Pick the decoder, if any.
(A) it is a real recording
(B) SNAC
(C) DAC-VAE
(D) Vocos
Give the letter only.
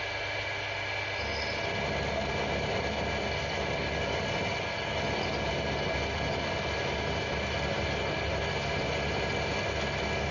A